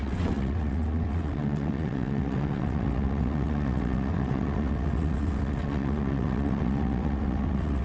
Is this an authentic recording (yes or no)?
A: no